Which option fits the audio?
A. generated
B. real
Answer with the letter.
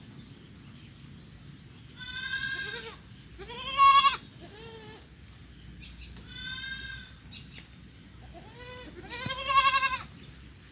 B